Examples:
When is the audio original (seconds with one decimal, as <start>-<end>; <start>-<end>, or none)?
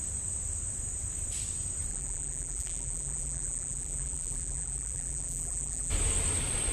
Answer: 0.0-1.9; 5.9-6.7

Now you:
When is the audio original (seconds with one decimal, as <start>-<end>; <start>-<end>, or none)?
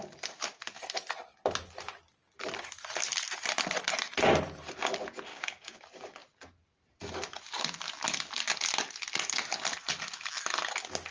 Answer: 0.0-5.3; 5.8-11.1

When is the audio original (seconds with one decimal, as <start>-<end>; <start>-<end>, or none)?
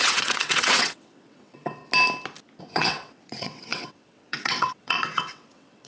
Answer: 1.8-2.6